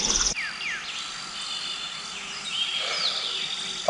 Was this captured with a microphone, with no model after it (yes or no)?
yes